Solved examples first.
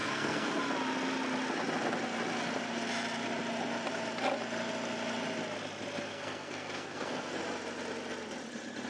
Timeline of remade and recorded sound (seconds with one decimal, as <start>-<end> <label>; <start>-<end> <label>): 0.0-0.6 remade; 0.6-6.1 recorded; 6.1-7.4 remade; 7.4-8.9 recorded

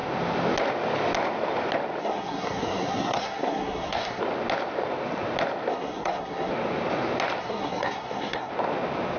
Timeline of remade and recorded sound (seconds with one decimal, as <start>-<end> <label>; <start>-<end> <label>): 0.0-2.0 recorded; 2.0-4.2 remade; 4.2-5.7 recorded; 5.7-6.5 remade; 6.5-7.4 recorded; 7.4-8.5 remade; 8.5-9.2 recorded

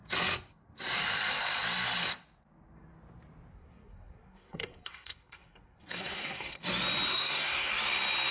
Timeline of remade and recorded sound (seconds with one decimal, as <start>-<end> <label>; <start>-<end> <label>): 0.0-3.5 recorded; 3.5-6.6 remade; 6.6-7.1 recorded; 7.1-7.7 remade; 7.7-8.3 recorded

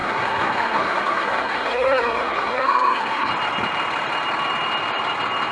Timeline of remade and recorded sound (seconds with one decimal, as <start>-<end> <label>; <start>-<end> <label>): 0.0-3.3 remade; 3.3-5.5 recorded

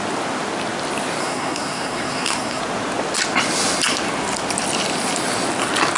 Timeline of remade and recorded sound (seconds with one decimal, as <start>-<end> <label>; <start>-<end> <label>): 0.0-1.2 recorded; 1.2-2.6 remade; 2.6-6.0 recorded

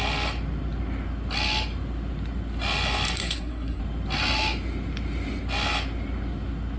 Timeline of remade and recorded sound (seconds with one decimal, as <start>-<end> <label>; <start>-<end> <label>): 0.0-3.2 recorded; 3.2-3.8 remade; 3.8-6.8 recorded

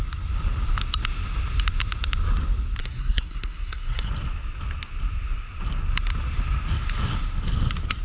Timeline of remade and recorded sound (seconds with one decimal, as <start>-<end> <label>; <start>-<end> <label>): 0.0-2.8 recorded; 2.8-4.1 remade; 4.1-8.0 recorded